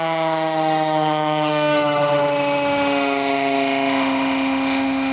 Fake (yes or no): yes